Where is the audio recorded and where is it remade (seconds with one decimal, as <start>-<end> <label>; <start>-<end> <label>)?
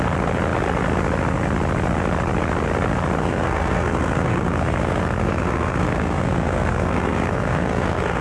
0.0-3.2 recorded; 3.2-8.2 remade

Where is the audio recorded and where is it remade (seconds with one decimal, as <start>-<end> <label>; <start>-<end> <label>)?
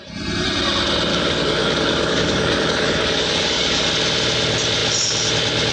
0.0-1.1 recorded; 1.1-3.9 remade; 3.9-5.7 recorded